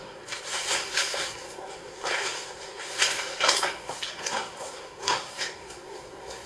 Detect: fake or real fake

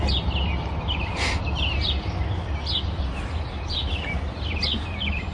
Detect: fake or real real